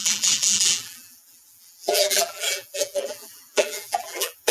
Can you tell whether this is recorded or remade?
remade